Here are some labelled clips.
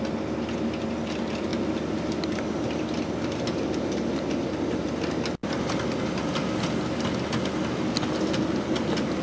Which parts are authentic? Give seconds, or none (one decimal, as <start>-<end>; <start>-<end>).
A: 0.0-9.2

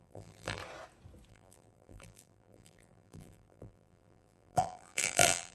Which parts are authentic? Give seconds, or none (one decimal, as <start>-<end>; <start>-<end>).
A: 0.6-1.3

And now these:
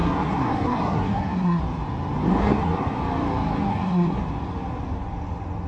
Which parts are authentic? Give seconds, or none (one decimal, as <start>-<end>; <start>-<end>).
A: 1.6-2.4; 3.0-3.7; 4.2-5.7

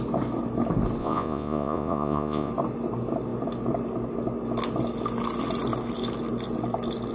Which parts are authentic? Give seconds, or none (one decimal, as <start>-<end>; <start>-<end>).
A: 0.0-1.0; 2.5-7.1

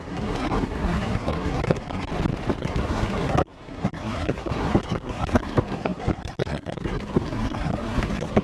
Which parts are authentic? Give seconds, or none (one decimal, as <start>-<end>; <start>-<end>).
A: 2.1-2.6